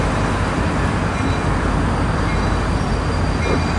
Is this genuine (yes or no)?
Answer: yes